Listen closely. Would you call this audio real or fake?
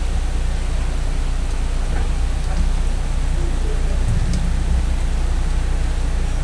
real